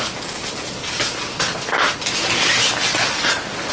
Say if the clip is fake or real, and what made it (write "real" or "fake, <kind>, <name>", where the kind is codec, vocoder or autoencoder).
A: real